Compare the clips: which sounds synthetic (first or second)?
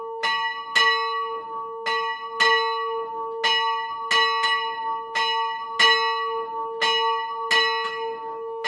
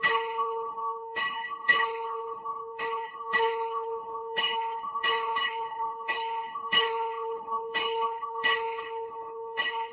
second